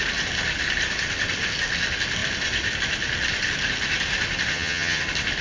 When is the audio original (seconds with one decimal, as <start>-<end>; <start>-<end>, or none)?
0.0-4.5; 5.0-5.4